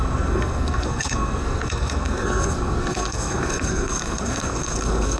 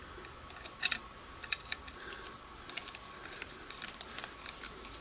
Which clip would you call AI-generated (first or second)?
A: first